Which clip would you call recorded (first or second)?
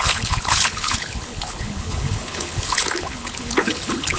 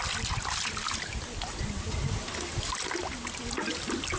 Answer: second